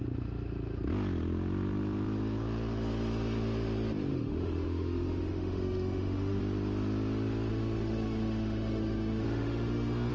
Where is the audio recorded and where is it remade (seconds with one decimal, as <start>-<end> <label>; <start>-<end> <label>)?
0.0-4.1 recorded; 4.1-6.4 remade; 6.4-7.5 recorded; 7.5-10.1 remade